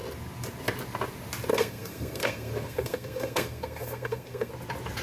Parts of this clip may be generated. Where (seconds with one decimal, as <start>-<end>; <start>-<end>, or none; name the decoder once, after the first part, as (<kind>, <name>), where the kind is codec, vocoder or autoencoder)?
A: 1.5-4.5 (codec, SNAC)